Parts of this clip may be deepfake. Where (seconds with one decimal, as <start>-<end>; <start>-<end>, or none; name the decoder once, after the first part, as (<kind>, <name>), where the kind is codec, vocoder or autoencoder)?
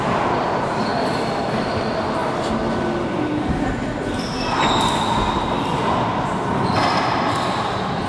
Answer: none